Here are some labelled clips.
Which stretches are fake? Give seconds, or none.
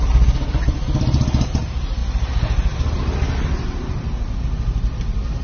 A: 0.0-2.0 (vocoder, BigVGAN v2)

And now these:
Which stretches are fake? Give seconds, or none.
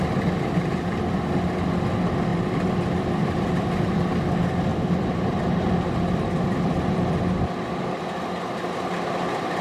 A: 2.3-3.5 (vocoder, BigVGAN v2); 4.7-7.5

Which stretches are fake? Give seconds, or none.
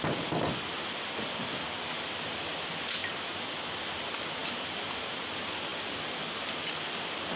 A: 4.4-5.1 (vocoder, BigVGAN v2)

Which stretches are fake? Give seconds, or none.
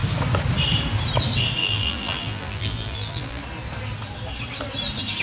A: 1.6-3.4 (vocoder, BigVGAN v2)